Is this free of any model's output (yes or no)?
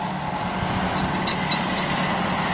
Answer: yes